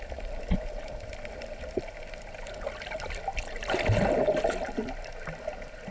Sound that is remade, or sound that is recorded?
recorded